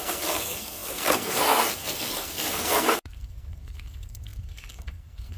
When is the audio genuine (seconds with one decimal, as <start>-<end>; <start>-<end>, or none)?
none

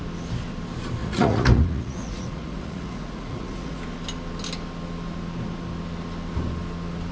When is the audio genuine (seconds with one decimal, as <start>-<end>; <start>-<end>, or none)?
0.0-1.0; 3.8-7.1